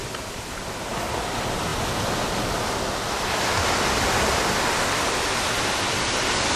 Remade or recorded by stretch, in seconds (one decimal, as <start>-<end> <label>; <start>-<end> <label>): 0.0-6.6 recorded